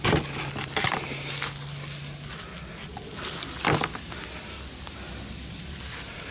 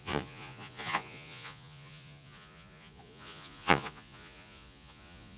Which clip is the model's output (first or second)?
second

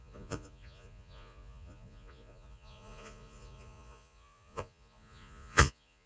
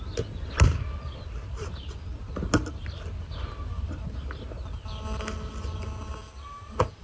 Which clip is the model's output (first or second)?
first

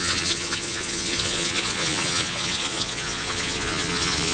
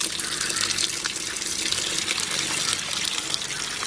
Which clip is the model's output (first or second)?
first